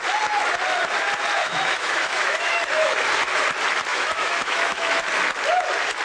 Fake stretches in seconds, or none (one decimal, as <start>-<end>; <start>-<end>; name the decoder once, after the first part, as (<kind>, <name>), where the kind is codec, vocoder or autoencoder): 1.4-3.5 (autoencoder, DAC-VAE); 3.9-5.0